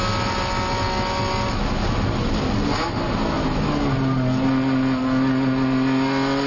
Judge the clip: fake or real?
real